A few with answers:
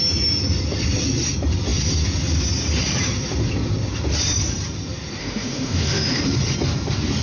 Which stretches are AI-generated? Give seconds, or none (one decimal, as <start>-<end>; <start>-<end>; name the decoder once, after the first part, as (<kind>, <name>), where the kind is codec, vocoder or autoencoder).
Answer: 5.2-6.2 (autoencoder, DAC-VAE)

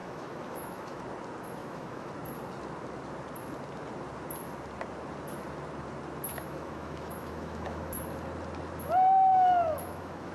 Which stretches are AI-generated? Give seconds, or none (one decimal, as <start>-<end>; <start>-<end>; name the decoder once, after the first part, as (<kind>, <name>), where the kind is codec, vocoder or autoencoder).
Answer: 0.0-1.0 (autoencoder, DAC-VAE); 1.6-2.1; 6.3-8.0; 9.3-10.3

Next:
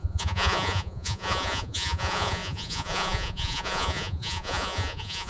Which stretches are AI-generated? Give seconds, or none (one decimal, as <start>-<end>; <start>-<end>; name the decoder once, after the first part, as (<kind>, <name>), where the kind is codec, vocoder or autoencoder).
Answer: 0.0-5.3 (vocoder, Vocos)

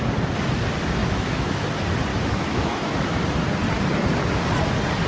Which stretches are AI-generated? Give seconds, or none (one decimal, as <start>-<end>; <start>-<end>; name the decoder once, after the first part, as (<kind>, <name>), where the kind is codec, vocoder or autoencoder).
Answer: 1.0-1.6 (autoencoder, DAC-VAE); 2.1-3.2

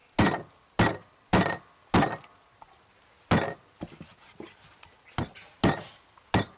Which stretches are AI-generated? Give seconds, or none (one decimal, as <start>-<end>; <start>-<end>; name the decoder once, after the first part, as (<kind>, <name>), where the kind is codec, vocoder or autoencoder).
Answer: none

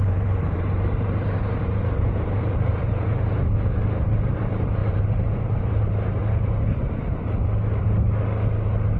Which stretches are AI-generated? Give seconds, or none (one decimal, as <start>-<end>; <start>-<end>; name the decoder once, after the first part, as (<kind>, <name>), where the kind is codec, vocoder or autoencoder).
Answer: 0.0-3.1 (vocoder, BigVGAN v2); 4.3-6.2